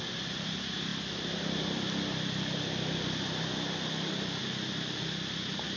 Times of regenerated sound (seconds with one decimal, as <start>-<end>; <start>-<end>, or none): none